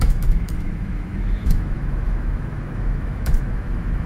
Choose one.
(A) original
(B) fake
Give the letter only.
B